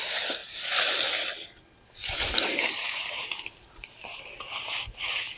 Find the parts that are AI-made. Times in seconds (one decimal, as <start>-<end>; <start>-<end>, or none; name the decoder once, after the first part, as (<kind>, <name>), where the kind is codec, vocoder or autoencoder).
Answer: 2.0-5.4 (vocoder, BigVGAN v2)